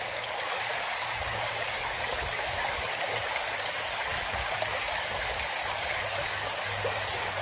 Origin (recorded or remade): remade